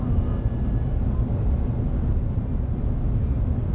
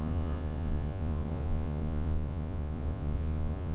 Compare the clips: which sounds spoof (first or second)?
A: second